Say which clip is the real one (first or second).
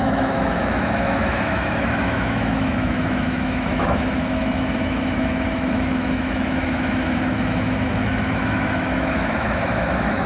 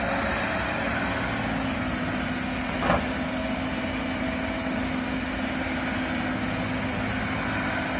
second